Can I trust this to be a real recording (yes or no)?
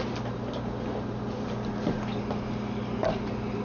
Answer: yes